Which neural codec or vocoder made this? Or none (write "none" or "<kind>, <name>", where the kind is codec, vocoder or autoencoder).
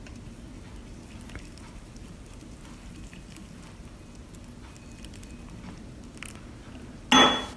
none